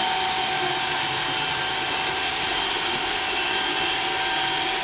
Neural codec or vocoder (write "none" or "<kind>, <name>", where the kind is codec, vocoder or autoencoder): none